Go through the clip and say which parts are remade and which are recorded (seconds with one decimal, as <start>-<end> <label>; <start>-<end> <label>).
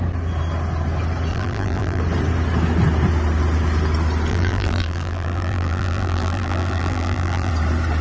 0.0-1.3 recorded; 1.3-2.0 remade; 2.0-4.3 recorded; 4.3-7.5 remade; 7.5-8.0 recorded